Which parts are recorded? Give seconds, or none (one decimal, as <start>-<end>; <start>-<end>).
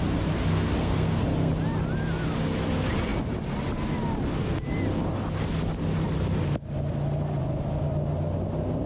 0.0-0.8; 1.5-8.9